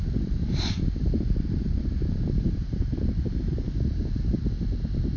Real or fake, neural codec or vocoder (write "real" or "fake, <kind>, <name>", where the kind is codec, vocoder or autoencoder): real